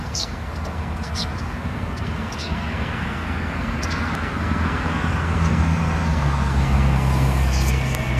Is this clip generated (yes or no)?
yes